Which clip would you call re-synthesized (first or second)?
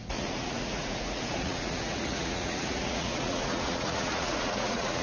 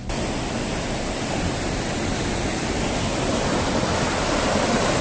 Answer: first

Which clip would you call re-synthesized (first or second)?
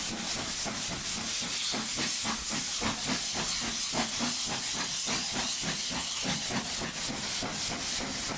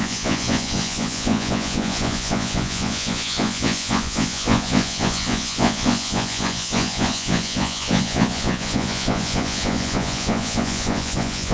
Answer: second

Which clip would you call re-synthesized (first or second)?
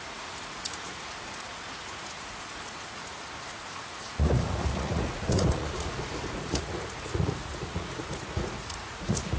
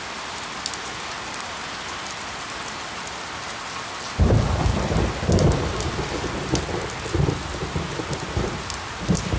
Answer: first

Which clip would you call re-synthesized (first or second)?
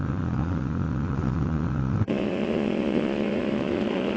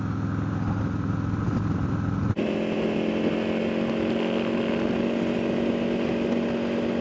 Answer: first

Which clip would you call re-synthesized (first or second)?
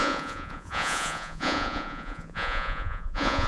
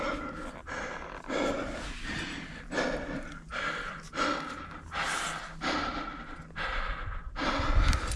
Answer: first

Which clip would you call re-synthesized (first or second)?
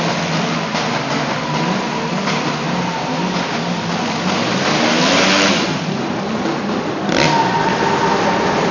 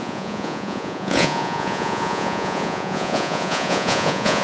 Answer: second